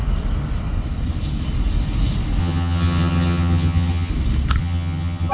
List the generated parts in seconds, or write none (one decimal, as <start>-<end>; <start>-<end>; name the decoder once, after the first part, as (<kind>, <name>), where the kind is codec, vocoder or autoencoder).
2.4-4.1 (vocoder, HiFi-GAN); 4.6-5.3